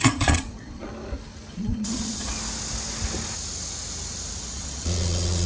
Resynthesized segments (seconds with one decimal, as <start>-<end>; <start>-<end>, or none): 0.0-0.9; 1.5-2.3; 4.4-5.5